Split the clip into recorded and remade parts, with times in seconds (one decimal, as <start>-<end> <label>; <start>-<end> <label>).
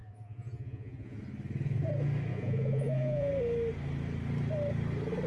0.0-1.2 remade; 1.2-2.3 recorded; 2.3-3.3 remade; 3.3-5.3 recorded